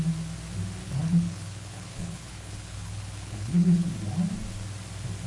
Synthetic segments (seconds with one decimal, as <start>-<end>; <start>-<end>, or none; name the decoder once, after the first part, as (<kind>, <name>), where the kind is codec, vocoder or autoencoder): 0.8-3.9 (codec, HILCodec)